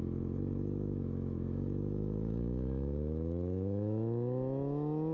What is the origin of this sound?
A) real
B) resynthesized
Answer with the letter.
B